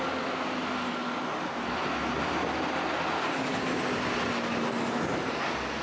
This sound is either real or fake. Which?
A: real